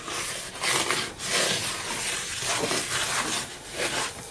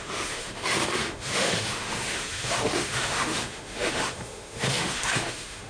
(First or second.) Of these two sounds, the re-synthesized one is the second